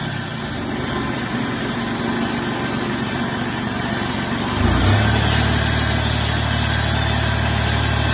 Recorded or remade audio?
recorded